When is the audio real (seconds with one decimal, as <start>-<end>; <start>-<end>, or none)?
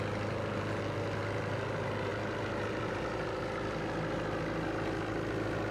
0.0-5.7